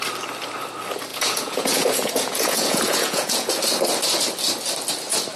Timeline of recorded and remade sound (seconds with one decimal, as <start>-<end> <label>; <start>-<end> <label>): 0.0-1.1 recorded; 1.1-3.5 remade; 3.5-5.4 recorded